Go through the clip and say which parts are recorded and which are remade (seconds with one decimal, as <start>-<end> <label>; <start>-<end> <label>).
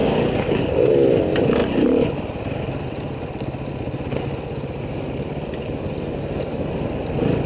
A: 0.0-0.9 remade; 0.9-7.5 recorded